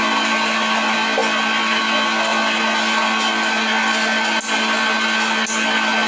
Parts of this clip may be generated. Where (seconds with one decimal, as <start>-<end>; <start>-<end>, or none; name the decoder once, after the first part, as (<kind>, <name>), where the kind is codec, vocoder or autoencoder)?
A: none